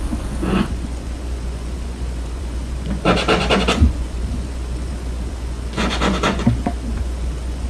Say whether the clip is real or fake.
fake